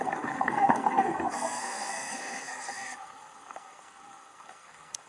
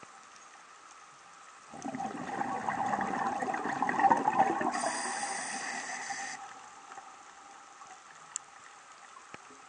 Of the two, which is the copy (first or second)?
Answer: first